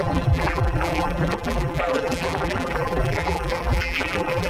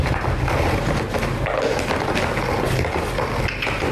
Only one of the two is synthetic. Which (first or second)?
first